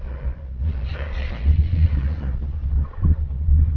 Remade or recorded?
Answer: remade